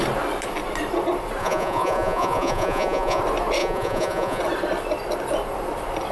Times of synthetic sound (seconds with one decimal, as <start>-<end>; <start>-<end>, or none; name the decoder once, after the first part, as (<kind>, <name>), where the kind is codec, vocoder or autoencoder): 1.4-3.2 (vocoder, Vocos); 3.6-4.4